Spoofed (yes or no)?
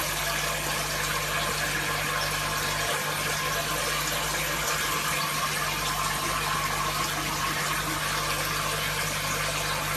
no